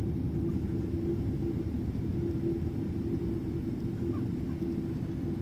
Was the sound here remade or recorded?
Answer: recorded